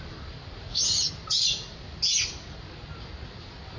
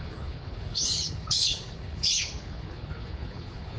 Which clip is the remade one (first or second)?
second